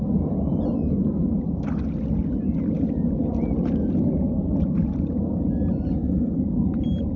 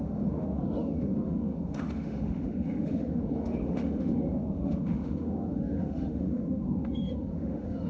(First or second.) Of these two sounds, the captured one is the first